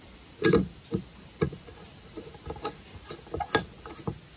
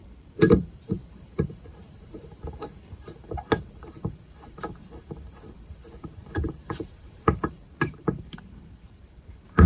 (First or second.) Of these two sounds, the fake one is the second